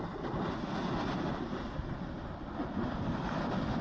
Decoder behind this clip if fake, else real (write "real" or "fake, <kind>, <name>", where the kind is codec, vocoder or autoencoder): real